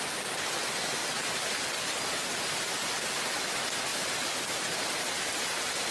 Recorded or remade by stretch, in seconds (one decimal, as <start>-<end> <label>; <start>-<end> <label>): 0.0-3.9 recorded; 3.9-5.9 remade